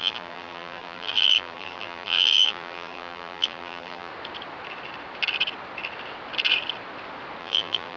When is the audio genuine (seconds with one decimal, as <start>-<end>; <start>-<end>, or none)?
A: 4.1-7.4

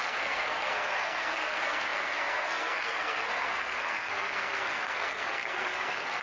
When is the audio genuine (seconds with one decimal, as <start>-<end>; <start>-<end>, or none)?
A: none

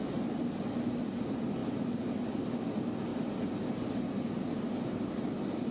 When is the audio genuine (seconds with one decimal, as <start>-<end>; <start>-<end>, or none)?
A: 0.0-5.7

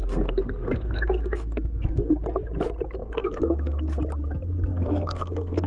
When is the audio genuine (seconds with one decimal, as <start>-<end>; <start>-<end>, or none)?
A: 2.1-3.0; 4.0-4.7

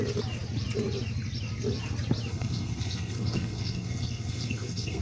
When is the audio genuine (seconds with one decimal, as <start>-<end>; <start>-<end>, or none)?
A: 0.0-2.3

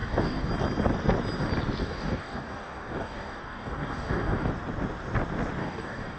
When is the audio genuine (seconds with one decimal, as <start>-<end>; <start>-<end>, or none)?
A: 0.5-1.8; 4.5-5.6

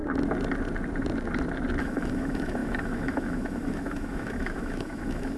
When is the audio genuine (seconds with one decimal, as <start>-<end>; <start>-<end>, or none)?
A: 0.0-1.8

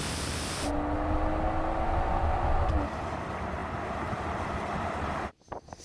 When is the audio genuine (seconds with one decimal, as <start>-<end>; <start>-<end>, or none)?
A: 0.0-5.8